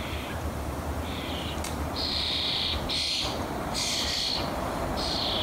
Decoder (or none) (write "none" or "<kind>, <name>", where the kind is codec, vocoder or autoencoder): none